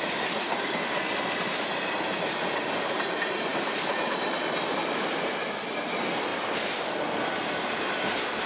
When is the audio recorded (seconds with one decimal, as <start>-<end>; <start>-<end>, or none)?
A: 0.0-8.5